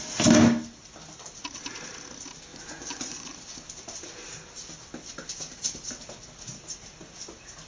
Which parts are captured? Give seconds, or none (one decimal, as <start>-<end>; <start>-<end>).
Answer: 0.0-2.5; 3.3-7.7